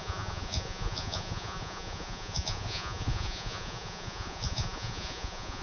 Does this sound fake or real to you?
fake